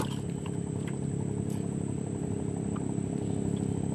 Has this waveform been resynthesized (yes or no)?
no